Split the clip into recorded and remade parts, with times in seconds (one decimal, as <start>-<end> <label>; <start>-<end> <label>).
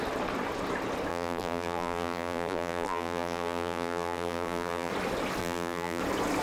0.0-1.1 recorded; 1.1-4.9 remade; 4.9-5.4 recorded; 5.4-6.0 remade; 6.0-6.4 recorded